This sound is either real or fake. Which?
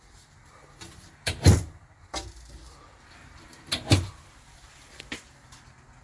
fake